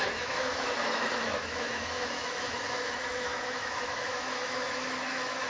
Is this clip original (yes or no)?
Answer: no